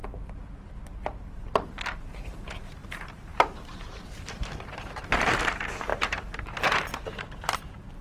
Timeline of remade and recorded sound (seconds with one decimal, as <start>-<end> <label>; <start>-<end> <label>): 0.0-2.8 recorded; 2.8-5.1 remade; 5.1-5.9 recorded; 5.9-8.0 remade